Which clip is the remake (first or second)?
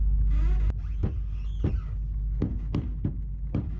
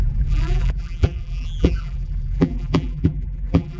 second